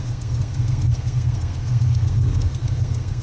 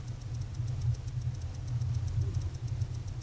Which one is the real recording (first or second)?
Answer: second